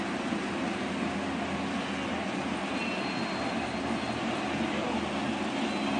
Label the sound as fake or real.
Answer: real